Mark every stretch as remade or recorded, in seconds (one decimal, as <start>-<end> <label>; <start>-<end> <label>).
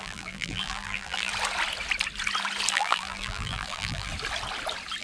0.0-1.3 remade; 1.3-2.7 recorded; 2.7-4.1 remade; 4.1-5.0 recorded